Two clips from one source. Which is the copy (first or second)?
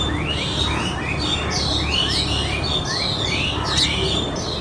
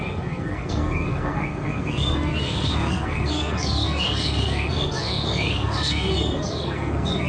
second